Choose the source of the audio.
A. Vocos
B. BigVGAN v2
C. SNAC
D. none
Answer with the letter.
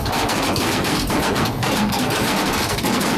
C